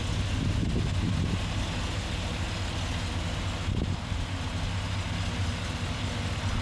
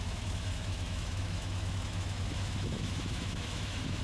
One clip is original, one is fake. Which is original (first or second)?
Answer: first